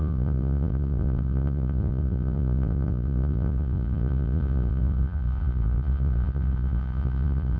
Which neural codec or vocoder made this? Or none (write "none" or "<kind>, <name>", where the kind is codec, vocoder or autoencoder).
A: vocoder, Vocos